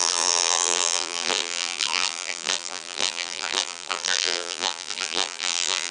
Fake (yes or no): yes